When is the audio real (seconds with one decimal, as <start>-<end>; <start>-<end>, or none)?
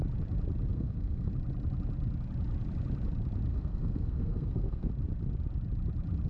0.0-0.7; 1.3-3.5; 4.9-6.3